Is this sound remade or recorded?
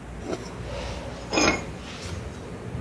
recorded